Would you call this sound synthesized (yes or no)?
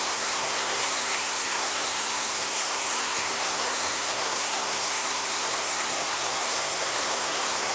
yes